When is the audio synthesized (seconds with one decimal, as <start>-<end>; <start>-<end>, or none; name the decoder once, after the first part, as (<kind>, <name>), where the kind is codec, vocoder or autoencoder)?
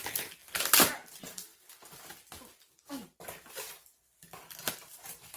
none